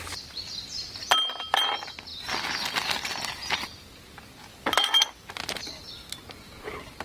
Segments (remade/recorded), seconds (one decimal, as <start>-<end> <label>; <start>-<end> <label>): 0.0-4.5 recorded; 4.5-5.3 remade; 5.3-7.0 recorded